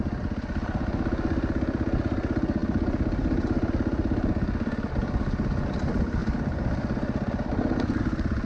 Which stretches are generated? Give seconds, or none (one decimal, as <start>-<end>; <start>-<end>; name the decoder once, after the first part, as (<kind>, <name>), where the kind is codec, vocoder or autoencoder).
none